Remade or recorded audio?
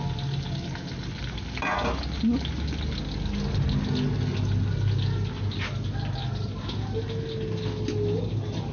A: recorded